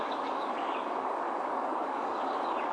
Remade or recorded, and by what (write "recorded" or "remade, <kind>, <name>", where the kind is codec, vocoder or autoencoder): remade, codec, DAC